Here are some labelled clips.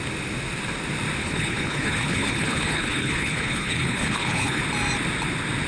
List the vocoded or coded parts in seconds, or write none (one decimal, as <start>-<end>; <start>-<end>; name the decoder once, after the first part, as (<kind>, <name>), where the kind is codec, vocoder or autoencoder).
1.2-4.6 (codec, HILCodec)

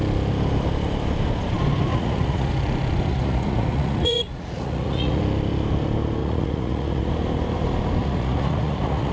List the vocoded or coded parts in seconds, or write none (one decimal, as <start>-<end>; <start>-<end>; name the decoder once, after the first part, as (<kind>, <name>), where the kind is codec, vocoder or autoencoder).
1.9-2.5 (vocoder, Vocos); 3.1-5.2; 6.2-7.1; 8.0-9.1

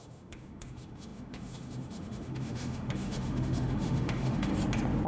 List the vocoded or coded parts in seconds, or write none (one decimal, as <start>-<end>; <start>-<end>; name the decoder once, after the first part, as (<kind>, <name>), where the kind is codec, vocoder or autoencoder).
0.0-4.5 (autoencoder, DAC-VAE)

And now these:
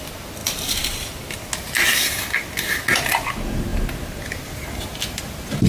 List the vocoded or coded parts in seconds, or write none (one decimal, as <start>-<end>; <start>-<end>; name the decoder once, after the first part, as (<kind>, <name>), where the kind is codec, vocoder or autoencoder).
none